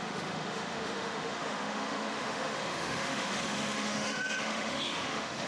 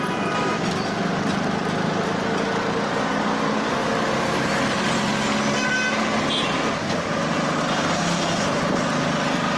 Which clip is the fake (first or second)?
first